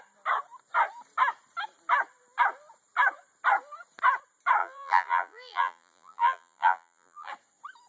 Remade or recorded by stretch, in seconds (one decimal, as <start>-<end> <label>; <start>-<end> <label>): 0.0-4.6 recorded; 4.6-7.3 remade; 7.3-7.9 recorded